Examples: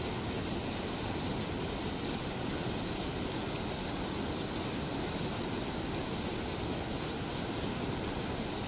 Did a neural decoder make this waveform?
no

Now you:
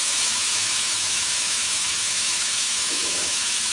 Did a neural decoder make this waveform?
yes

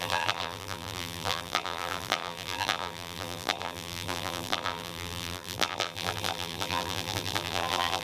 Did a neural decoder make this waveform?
yes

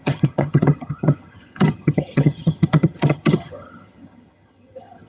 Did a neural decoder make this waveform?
yes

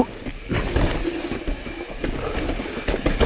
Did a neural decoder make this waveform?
no